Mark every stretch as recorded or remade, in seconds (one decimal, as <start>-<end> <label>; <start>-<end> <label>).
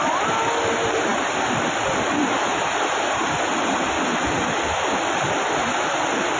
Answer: 0.0-6.4 recorded